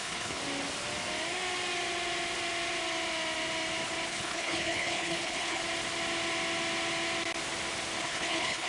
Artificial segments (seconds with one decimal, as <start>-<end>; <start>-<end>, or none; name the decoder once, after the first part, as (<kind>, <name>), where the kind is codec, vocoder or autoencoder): 0.0-0.4 (codec, HILCodec); 4.1-5.6; 8.0-8.7